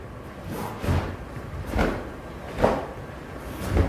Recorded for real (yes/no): yes